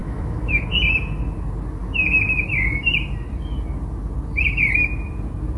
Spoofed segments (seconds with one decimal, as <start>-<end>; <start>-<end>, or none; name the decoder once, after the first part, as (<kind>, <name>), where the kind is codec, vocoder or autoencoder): 0.0-0.7 (autoencoder, DAC-VAE)